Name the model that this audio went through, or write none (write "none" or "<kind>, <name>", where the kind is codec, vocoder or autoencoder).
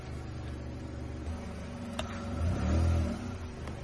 none